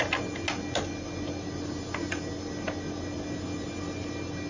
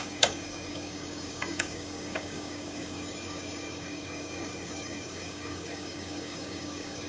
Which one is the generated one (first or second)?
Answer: second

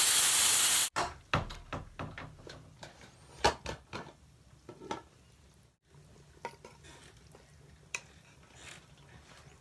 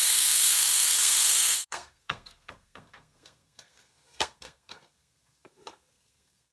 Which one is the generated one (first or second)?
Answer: second